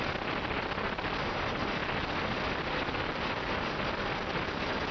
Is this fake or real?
real